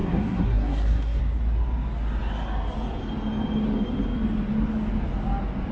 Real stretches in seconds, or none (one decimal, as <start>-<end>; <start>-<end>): 1.2-5.7

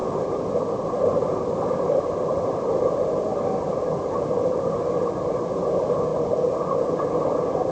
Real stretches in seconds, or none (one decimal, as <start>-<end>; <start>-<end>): 0.0-7.7

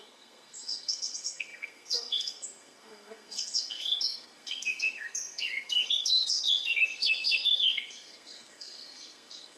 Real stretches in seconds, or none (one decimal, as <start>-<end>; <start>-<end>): none

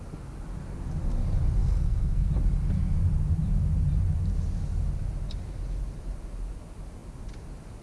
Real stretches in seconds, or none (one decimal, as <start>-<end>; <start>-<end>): 0.0-1.6; 2.3-7.8

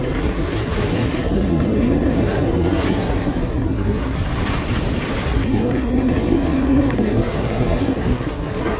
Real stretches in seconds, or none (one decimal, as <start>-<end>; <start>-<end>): 4.3-5.2

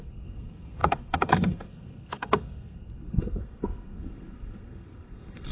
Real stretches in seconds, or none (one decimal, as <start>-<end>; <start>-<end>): none

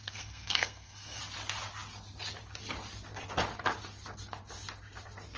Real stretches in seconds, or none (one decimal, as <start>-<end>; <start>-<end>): 1.2-5.4